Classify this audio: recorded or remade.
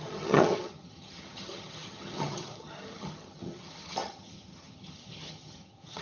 remade